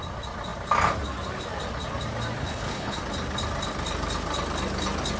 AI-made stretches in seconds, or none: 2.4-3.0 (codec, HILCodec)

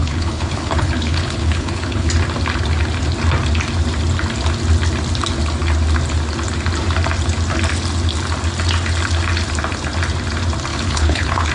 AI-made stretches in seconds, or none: 0.0-2.1 (codec, HILCodec); 10.7-11.5